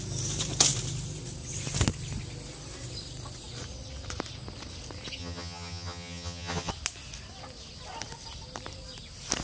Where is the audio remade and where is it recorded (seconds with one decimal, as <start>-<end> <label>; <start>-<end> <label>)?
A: 0.0-5.2 recorded; 5.2-6.7 remade; 6.7-9.4 recorded